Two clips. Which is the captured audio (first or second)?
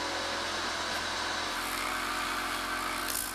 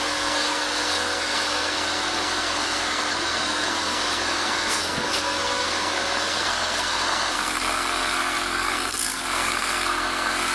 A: first